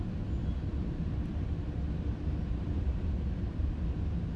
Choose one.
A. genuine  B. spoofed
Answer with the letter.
B